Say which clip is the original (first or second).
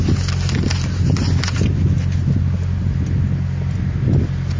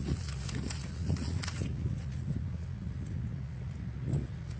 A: first